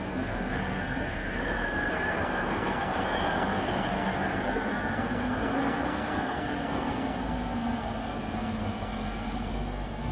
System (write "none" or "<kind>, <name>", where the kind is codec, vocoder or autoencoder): codec, SNAC